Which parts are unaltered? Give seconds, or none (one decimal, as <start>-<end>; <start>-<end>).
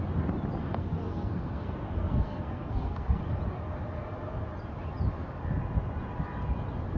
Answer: 0.0-0.6; 3.2-7.0